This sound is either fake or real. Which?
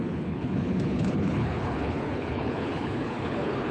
fake